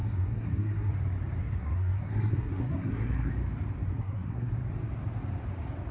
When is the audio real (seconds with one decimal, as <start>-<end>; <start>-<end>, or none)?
0.9-1.4; 3.3-3.9; 4.5-5.9